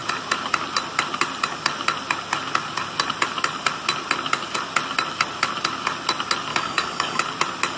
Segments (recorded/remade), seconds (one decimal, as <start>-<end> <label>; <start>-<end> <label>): 0.0-6.5 recorded; 6.5-7.2 remade; 7.2-7.8 recorded